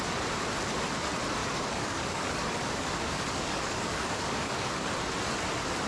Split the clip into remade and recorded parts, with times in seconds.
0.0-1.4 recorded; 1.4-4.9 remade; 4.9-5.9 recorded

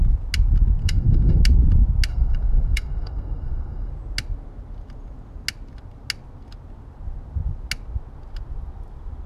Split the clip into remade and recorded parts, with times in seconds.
0.0-0.8 recorded; 0.8-1.4 remade; 1.4-2.1 recorded; 2.1-3.9 remade; 3.9-9.3 recorded

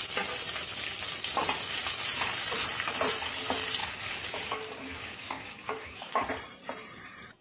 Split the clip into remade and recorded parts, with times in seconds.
0.0-3.8 recorded; 3.8-6.3 remade; 6.3-7.4 recorded

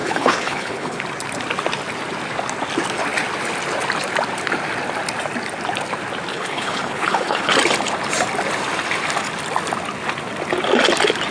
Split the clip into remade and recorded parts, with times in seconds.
0.0-1.0 remade; 1.0-6.3 recorded; 6.3-7.5 remade; 7.5-11.3 recorded

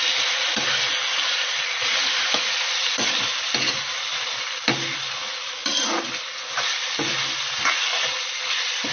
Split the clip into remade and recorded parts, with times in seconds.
0.0-3.8 remade; 3.8-8.9 recorded